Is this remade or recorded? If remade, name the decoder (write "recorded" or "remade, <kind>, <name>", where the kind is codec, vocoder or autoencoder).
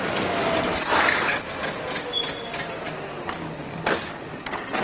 recorded